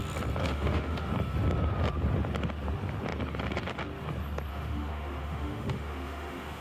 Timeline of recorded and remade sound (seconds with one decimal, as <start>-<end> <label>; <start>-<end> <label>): 0.0-0.4 recorded; 0.4-1.1 remade; 1.1-4.5 recorded; 4.5-6.6 remade